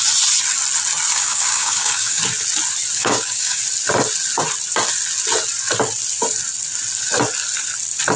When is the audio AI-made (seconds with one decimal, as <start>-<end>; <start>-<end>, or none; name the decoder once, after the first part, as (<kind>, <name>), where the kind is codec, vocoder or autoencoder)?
1.1-2.2 (codec, DAC); 3.0-3.6